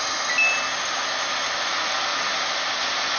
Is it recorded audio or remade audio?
recorded